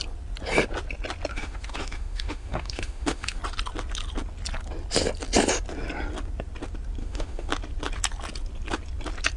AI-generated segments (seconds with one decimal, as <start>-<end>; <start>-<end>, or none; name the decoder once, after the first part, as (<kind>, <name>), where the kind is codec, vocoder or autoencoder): 1.3-3.4 (autoencoder, DAC-VAE); 7.0-7.5